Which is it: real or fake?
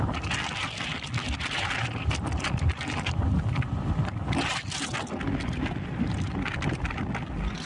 real